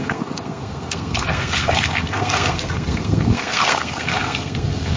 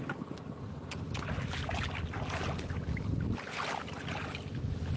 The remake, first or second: first